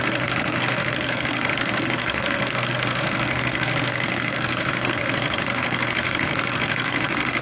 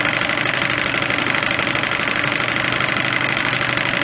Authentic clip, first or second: second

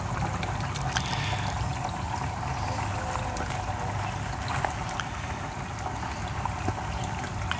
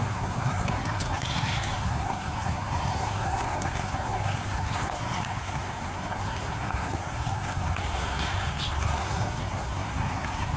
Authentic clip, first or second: first